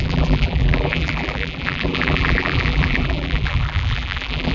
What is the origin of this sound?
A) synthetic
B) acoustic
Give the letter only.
A